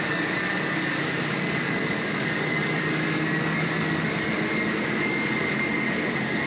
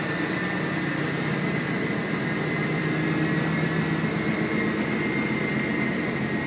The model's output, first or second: first